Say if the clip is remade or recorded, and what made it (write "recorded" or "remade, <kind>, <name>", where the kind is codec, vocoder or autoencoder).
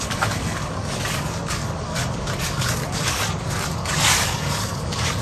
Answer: remade, codec, DAC